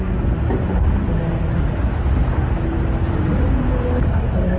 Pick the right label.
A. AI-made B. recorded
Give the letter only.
B